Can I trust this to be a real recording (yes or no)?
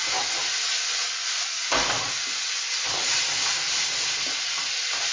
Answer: yes